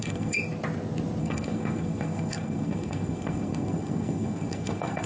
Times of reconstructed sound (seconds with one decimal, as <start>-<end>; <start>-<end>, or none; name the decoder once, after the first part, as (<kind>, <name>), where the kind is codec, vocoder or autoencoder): 0.0-0.4 (codec, SNAC); 1.2-5.1